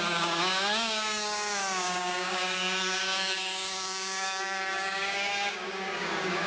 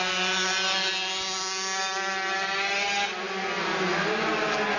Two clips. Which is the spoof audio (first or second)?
first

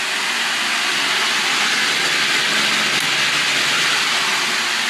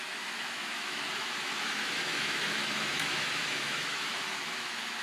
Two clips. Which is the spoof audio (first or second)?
second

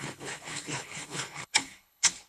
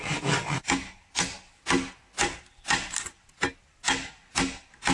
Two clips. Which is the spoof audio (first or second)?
first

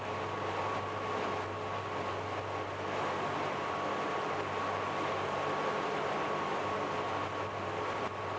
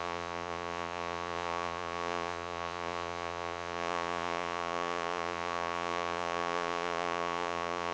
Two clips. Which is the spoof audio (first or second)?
second